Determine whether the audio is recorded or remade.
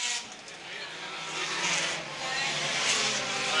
recorded